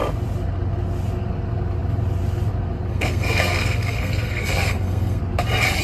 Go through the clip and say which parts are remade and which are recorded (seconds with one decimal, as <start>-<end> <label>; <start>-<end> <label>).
0.0-2.9 recorded; 2.9-5.2 remade; 5.2-5.8 recorded